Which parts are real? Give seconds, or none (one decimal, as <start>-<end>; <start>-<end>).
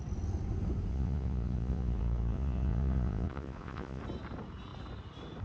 0.0-0.9; 4.0-5.4